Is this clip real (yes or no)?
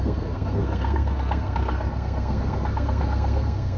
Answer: no